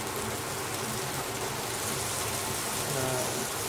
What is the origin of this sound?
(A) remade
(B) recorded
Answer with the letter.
B